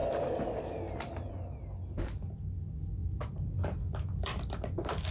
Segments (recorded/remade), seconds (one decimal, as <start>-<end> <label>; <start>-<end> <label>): 0.0-1.3 remade; 1.3-3.0 recorded; 3.0-5.1 remade